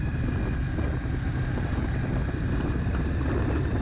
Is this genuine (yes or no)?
yes